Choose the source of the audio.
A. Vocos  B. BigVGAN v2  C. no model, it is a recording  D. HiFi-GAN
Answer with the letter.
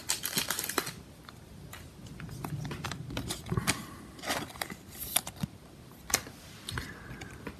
C